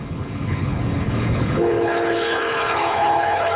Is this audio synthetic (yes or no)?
yes